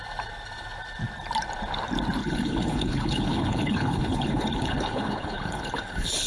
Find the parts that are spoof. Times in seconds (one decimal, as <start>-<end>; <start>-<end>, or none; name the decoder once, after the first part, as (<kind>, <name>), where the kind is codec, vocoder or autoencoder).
2.2-6.3 (codec, HILCodec)